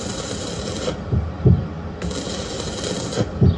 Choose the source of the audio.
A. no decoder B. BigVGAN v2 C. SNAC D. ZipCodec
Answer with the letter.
A